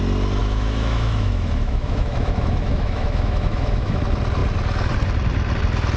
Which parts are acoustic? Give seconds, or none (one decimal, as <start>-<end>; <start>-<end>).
0.0-0.4; 4.0-6.0